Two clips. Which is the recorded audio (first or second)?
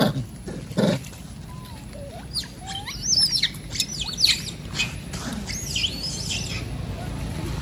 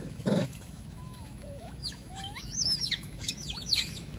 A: first